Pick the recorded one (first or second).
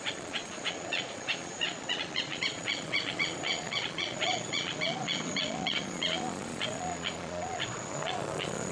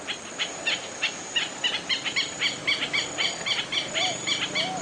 second